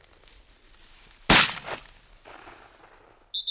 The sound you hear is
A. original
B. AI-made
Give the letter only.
A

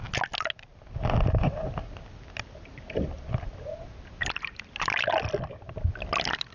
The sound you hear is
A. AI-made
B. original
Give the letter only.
B